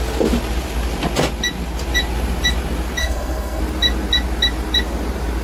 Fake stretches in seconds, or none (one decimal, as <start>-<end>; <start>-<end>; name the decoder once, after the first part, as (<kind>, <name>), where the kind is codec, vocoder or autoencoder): 3.0-3.6 (codec, SNAC)